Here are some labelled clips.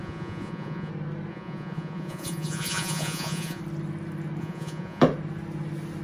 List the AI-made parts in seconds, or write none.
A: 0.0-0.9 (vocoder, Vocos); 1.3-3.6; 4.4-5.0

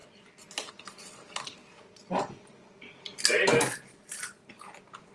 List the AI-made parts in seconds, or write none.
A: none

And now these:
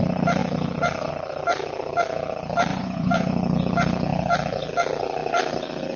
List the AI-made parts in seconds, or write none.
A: 2.7-3.3 (vocoder, Vocos)

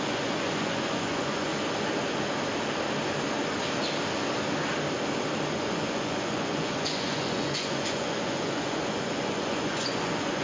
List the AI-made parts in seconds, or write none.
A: 0.0-1.5 (vocoder, Vocos); 5.5-10.4

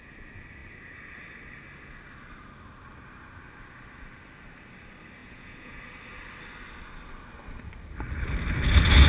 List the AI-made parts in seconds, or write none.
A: 5.2-5.8 (vocoder, Vocos)

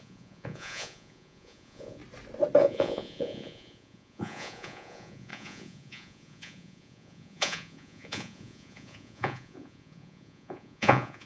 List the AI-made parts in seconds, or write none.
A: 0.0-2.0 (vocoder, Vocos); 2.6-11.3

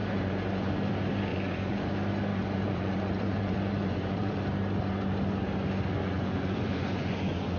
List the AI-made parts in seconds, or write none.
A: 0.0-0.7 (vocoder, Vocos); 1.3-1.9; 2.3-4.3; 6.0-7.6

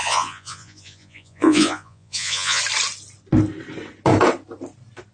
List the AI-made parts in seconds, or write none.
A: 0.0-2.6 (vocoder, Vocos)